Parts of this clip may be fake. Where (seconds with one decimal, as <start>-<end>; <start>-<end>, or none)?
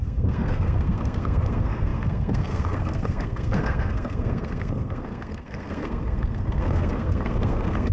0.0-7.9